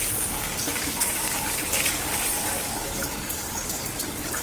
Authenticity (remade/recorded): remade